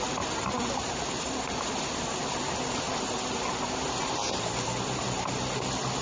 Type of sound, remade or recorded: recorded